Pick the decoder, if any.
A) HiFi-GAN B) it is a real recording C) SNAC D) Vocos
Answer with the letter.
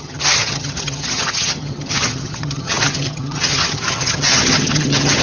A